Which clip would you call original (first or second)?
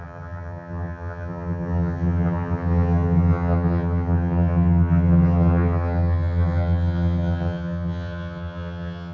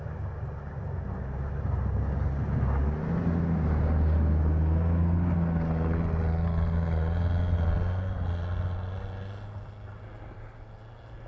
second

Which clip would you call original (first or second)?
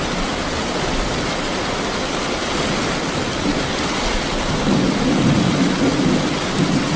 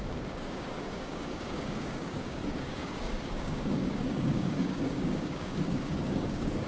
first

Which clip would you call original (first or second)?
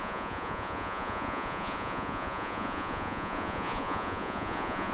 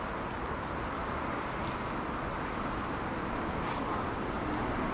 second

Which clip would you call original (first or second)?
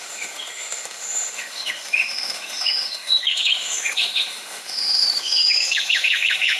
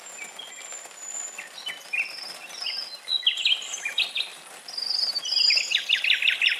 second